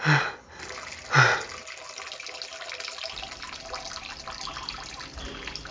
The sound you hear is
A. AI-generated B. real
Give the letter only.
B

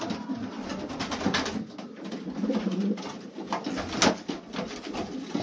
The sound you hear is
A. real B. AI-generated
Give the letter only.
A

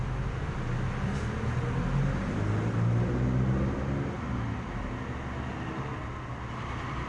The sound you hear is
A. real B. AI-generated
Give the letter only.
A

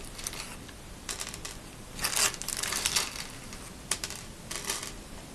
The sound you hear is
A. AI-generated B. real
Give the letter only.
B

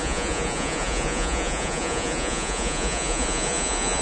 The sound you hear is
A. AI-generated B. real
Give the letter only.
A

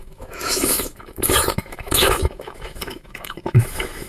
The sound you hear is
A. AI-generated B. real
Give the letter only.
A